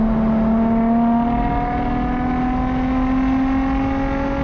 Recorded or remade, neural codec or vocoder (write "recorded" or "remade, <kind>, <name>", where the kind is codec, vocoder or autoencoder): recorded